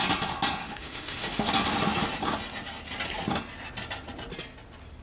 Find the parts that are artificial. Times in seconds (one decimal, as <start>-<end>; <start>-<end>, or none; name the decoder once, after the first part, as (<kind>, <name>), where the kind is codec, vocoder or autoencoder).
0.6-1.5 (autoencoder, DAC-VAE)